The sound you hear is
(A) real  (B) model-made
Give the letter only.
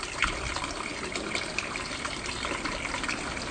A